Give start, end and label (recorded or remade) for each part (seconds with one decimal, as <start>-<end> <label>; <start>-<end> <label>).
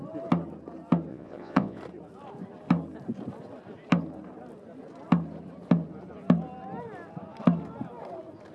0.0-1.1 recorded; 1.1-1.8 remade; 1.8-8.5 recorded